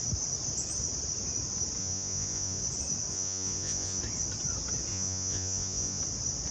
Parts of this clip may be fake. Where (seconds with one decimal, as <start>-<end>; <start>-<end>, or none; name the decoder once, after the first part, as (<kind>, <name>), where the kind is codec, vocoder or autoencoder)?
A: 1.8-2.6 (vocoder, Vocos); 3.1-4.0; 4.9-6.0